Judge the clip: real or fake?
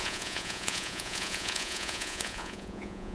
fake